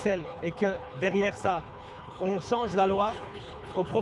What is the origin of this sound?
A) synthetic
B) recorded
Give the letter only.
A